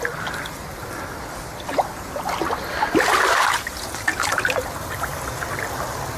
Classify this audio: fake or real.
real